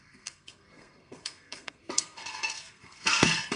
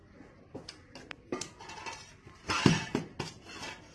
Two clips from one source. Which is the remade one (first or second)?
first